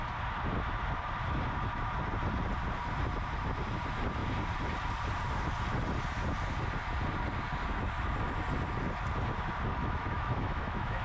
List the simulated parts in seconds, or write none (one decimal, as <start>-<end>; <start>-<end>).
9.8-11.0